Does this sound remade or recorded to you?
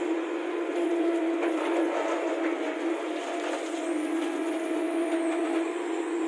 remade